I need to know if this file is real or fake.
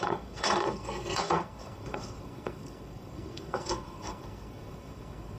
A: fake